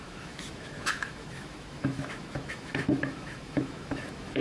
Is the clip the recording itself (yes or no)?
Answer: no